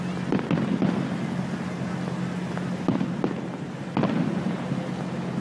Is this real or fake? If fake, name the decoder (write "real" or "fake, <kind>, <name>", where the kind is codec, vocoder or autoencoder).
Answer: real